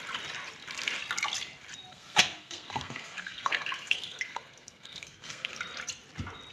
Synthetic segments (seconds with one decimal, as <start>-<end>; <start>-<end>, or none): 1.9-5.6